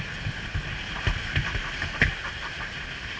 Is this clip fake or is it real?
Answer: real